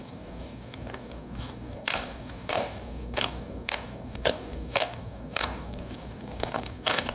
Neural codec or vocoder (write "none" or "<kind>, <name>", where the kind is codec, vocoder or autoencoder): codec, DAC